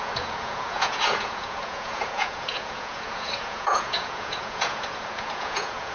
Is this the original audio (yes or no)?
no